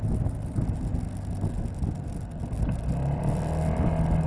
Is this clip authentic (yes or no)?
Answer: yes